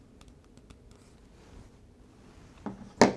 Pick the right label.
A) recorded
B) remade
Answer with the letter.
A